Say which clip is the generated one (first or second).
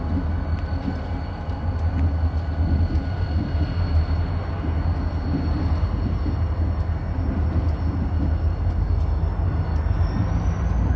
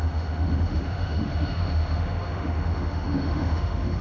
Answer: second